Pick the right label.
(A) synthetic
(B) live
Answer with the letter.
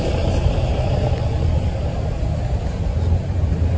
B